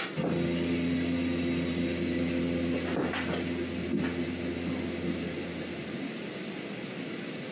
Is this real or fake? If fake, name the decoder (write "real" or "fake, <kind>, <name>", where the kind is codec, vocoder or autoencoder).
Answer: real